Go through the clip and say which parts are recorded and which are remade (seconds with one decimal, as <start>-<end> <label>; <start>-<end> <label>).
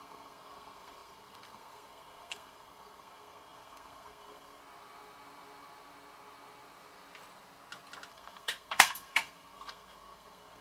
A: 0.0-4.6 remade; 4.6-8.1 recorded; 8.1-10.6 remade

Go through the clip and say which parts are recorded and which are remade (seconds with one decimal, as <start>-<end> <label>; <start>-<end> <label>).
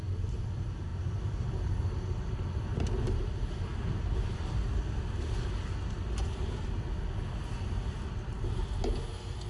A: 0.0-9.5 recorded